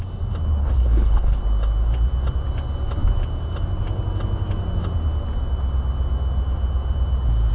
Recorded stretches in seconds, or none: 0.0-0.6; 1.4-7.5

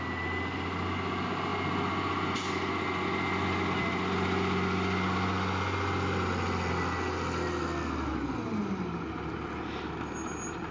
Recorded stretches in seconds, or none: 0.0-10.7

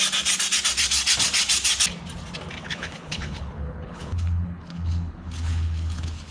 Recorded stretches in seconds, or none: 0.0-2.6

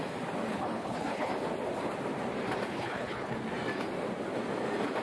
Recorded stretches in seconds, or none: 0.0-0.5; 1.3-2.7; 3.4-5.0

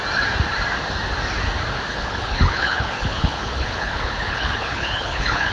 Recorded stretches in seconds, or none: 0.0-1.9

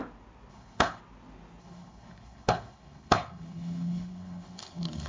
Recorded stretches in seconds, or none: 0.0-0.5; 1.0-1.6

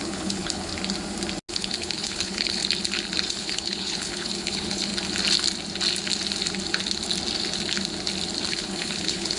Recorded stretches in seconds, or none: 0.7-1.5; 2.6-3.3; 4.9-8.5